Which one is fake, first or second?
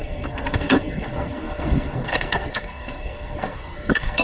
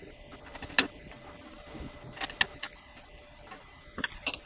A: first